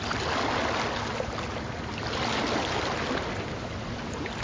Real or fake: real